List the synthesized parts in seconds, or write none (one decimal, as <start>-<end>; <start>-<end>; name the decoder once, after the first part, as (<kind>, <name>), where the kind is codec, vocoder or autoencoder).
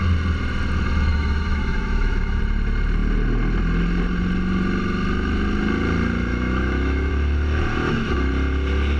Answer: 1.1-2.4 (autoencoder, DAC-VAE); 6.3-7.1; 7.7-8.3